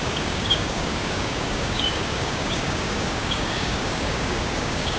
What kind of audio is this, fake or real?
fake